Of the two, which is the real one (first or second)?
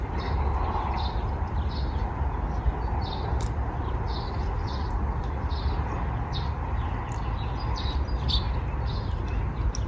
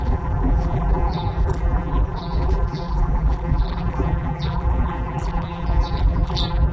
first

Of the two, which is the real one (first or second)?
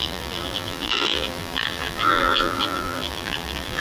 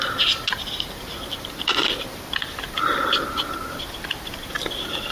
second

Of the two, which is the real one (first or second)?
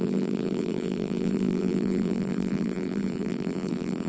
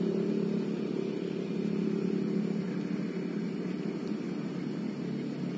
second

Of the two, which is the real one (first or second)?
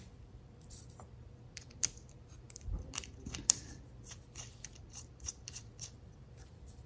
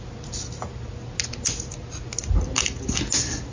second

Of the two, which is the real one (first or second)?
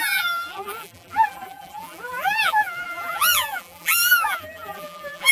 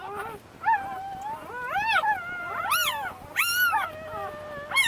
second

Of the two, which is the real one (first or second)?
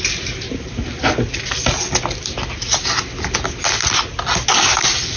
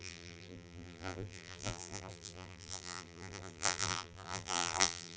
first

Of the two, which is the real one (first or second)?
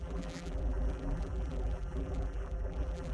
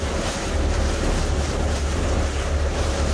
second